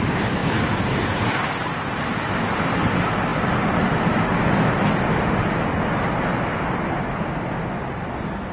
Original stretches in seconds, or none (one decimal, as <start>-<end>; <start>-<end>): 0.0-0.4; 1.7-8.5